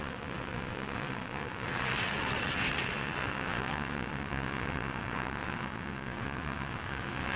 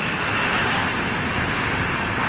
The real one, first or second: second